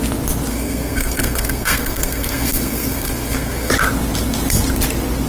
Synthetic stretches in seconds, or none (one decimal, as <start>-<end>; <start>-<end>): 0.5-3.7